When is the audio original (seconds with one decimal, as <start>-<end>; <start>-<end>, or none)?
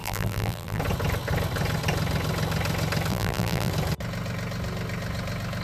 0.8-3.1; 3.7-5.6